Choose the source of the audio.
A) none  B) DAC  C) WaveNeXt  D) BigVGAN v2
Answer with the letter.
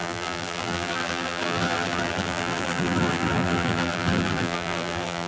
D